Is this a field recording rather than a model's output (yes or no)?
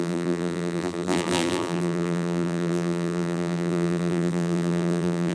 no